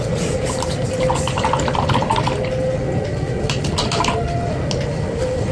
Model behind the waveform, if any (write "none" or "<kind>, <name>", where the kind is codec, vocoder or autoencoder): none